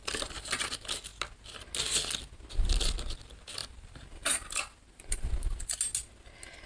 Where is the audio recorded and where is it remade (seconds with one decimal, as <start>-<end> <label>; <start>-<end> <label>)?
0.0-3.6 recorded; 3.6-4.6 remade; 4.6-6.7 recorded